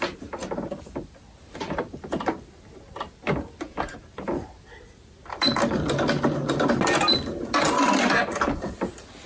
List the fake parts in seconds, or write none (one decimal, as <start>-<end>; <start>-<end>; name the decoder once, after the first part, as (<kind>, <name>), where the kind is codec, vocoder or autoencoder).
none